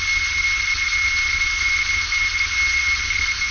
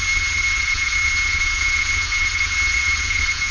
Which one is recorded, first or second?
first